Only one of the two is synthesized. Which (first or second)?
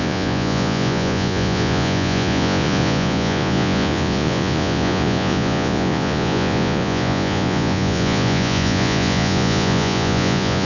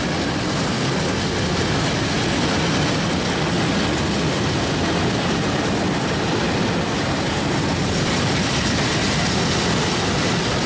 first